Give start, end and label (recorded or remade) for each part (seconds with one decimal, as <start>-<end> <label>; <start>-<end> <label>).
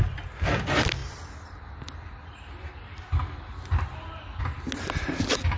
0.0-5.6 recorded